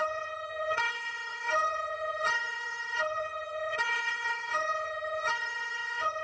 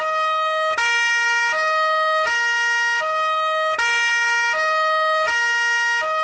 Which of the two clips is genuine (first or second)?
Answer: second